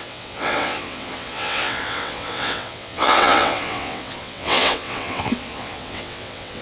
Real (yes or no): no